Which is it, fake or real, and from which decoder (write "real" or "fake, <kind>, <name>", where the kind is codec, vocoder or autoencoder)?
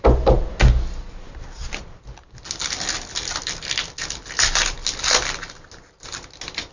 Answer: real